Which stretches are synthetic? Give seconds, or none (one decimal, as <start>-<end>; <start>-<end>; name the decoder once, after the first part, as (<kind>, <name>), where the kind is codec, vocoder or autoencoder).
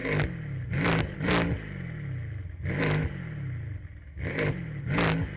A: none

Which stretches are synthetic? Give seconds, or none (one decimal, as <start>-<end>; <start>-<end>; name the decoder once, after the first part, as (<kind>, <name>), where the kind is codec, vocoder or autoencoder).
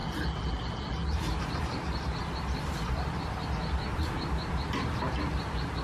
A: none